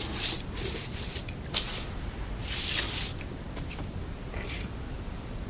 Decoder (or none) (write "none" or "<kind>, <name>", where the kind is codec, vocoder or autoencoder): none